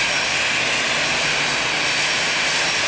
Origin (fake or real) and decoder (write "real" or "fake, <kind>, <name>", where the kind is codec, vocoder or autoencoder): real